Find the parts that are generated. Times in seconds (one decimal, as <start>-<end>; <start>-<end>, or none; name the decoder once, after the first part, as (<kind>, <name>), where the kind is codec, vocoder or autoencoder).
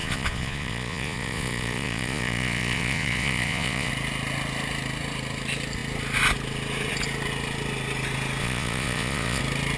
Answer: 0.0-3.9 (vocoder, Vocos); 8.4-9.4